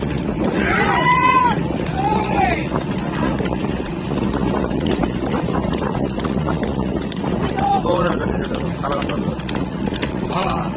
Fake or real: fake